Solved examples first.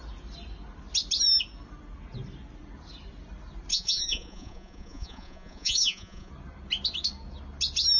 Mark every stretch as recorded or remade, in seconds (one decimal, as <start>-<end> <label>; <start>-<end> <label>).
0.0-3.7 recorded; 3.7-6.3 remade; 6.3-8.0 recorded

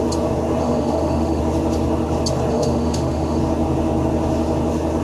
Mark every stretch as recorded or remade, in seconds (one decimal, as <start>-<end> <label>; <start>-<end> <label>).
0.0-0.6 recorded; 0.6-1.4 remade; 1.4-2.5 recorded; 2.5-3.4 remade; 3.4-5.0 recorded

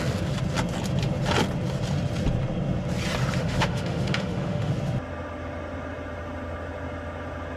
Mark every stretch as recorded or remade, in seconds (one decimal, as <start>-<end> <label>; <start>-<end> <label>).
0.0-3.4 recorded; 3.4-4.7 remade; 4.7-7.6 recorded

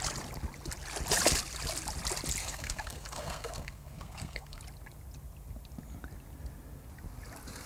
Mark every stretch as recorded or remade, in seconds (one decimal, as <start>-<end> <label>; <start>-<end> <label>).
0.0-2.4 recorded; 2.4-4.6 remade; 4.6-7.7 recorded

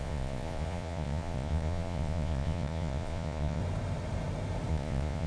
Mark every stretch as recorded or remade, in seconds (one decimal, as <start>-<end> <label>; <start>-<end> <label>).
0.0-3.6 remade; 3.6-4.7 recorded; 4.7-5.3 remade

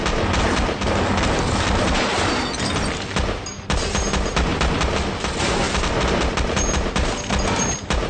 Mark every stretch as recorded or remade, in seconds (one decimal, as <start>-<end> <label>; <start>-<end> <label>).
0.0-8.1 recorded

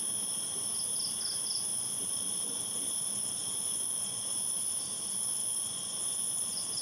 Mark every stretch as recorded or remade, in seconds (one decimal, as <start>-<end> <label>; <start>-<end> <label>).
0.0-1.7 recorded; 1.7-4.7 remade; 4.7-5.4 recorded; 5.4-6.8 remade

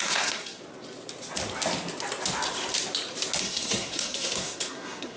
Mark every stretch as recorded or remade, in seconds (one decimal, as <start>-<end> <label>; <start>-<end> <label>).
0.0-0.6 remade; 0.6-3.4 recorded; 3.4-5.2 remade